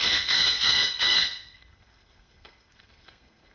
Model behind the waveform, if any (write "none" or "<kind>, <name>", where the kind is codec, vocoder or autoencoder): codec, SNAC